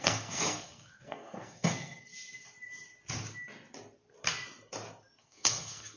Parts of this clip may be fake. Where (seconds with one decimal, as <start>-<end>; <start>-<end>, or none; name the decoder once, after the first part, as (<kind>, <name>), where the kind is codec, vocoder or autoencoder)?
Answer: 0.0-2.1 (codec, SNAC); 5.2-6.0

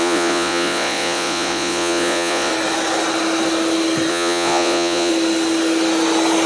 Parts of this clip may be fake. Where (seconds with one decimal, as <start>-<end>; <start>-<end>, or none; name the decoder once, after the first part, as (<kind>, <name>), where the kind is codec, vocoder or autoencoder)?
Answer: 0.0-2.5 (vocoder, Vocos); 4.1-5.1

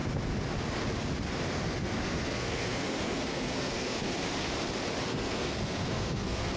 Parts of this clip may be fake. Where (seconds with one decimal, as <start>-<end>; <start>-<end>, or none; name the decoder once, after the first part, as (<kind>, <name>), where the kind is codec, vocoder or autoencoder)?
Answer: 1.8-4.0 (codec, SNAC); 5.1-6.6

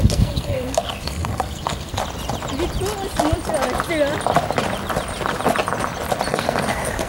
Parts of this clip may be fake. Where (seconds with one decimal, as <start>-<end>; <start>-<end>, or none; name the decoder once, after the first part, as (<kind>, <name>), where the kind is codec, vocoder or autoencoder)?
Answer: 0.0-2.0 (codec, SNAC); 6.3-7.1

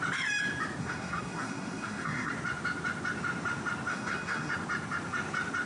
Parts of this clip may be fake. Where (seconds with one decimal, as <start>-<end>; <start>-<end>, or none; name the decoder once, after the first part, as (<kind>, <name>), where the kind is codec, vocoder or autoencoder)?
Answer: 0.8-2.3 (codec, SNAC); 3.9-4.5

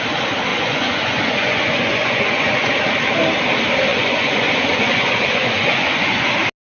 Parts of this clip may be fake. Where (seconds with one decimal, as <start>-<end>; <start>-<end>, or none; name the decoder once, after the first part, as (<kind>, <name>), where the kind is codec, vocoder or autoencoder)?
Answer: 0.5-2.7 (vocoder, Vocos); 3.9-6.3

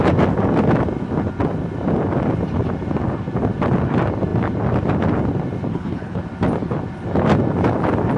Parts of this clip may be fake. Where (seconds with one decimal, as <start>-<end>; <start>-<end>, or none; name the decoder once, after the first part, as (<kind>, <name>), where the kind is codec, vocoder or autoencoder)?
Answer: 5.7-6.2 (codec, HILCodec)

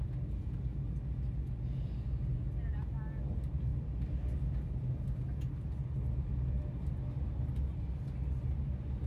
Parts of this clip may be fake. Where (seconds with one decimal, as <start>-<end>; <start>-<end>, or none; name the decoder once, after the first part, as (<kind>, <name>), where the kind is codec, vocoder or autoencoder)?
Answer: none